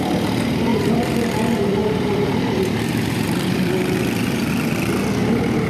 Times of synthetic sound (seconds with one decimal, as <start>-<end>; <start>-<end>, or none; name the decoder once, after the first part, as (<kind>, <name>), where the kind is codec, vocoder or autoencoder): 0.7-1.4 (vocoder, BigVGAN v2); 1.8-4.5